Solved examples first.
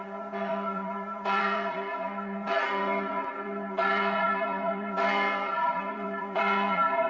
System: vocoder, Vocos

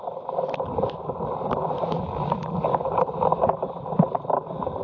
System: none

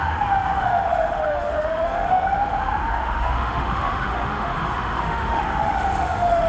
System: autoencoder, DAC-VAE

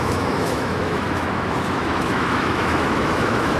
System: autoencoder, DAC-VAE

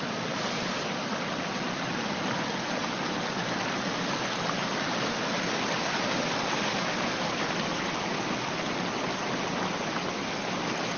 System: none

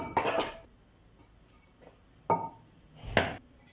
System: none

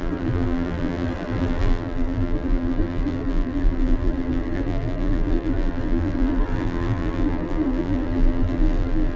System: vocoder, BigVGAN v2